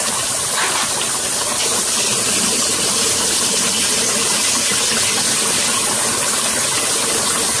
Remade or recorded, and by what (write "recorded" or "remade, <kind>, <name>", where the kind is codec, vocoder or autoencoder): recorded